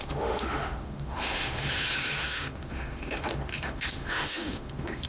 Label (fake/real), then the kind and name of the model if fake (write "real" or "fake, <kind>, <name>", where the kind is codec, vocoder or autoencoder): fake, autoencoder, DAC-VAE